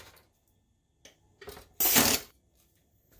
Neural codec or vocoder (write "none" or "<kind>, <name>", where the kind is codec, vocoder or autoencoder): none